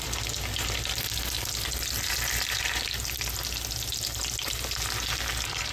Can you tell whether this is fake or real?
real